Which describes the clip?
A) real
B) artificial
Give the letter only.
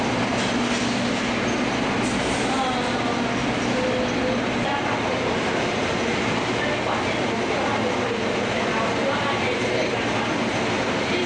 A